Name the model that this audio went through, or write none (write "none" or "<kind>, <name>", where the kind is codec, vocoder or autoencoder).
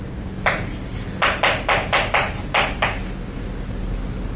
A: none